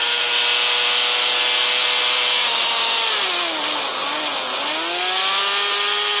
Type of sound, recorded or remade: recorded